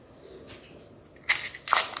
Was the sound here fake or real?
real